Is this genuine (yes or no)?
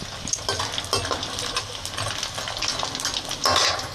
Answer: yes